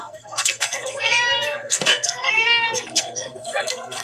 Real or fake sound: fake